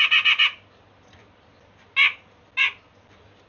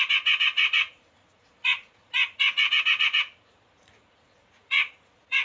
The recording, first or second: first